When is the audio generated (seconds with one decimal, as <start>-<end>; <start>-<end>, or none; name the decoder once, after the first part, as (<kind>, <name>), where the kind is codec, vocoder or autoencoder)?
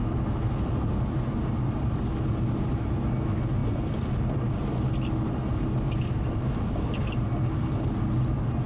none